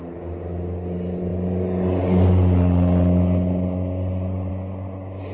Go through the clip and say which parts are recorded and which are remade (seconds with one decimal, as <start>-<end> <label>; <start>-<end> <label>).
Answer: 0.0-5.3 recorded